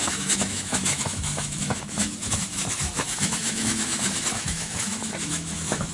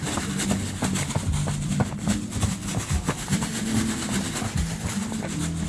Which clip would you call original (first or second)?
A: second